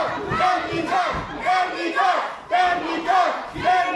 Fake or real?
real